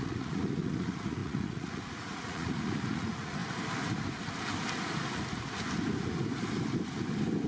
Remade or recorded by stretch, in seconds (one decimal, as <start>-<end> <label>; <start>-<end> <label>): 0.0-3.4 remade; 3.4-7.5 recorded